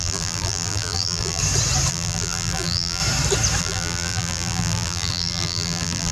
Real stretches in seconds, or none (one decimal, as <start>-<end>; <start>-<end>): 1.4-1.9; 3.0-3.6